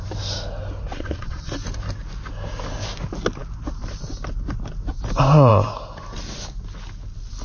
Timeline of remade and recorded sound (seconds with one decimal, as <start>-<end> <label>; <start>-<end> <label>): 0.0-0.9 recorded; 0.9-1.5 remade; 1.5-7.4 recorded